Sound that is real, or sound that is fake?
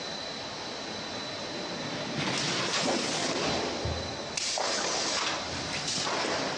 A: real